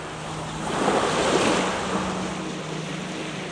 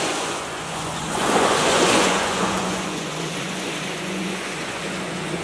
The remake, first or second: second